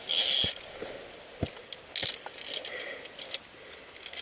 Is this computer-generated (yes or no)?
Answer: no